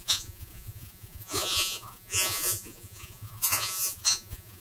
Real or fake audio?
fake